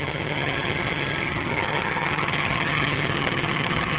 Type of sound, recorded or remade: remade